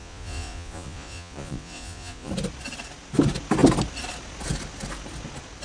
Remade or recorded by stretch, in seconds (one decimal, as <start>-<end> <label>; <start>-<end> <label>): 0.0-2.3 remade; 2.3-5.6 recorded